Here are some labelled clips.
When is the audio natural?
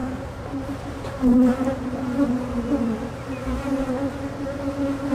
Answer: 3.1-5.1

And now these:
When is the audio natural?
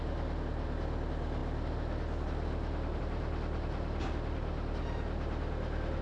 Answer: 0.0-6.0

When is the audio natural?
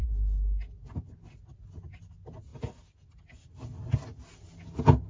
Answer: 0.0-5.1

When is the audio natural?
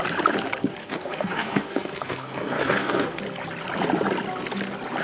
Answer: 0.0-0.8; 3.2-5.0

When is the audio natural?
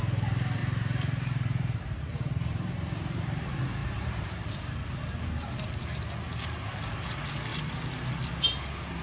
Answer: 0.0-0.6; 3.4-3.8; 6.1-9.0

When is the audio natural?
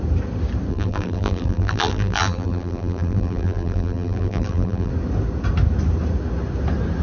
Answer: 0.0-0.7; 4.9-7.0